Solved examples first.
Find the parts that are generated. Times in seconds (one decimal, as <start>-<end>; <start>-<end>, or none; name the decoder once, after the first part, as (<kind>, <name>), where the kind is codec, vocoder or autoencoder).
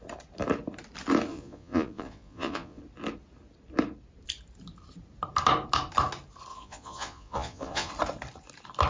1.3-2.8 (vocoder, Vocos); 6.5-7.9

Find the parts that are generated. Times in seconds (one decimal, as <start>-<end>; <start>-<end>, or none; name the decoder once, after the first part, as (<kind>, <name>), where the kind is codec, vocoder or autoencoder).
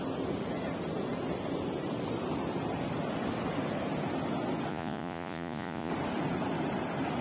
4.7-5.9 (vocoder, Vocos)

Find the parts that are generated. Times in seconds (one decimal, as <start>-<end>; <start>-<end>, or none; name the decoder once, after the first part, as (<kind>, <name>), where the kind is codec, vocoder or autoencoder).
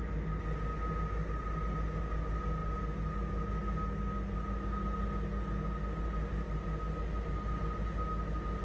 none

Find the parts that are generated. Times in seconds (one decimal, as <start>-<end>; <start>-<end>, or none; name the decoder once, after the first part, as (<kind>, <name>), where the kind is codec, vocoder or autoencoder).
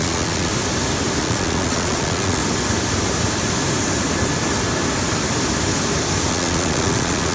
0.0-0.5 (vocoder, Vocos); 1.2-2.4; 6.3-7.3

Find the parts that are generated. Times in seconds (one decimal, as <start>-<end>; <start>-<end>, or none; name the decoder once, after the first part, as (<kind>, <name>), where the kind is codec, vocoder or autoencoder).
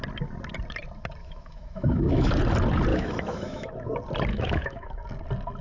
1.2-2.3 (autoencoder, DAC-VAE); 2.9-3.9; 4.3-4.9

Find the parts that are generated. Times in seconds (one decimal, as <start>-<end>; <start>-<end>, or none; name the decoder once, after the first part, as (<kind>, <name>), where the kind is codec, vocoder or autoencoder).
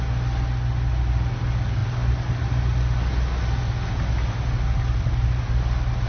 none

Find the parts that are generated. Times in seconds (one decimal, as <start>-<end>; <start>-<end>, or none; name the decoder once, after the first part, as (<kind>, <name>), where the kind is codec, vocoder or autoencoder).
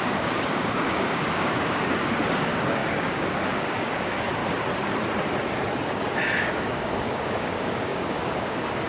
0.0-4.4 (codec, DAC); 6.4-8.9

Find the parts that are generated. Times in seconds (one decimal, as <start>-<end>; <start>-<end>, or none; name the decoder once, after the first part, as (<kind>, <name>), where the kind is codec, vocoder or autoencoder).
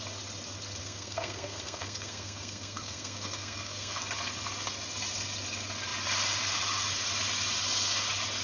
0.8-4.0 (codec, SNAC)